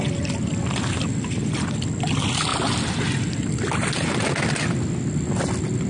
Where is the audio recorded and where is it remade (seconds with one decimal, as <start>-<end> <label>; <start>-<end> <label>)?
0.0-5.9 recorded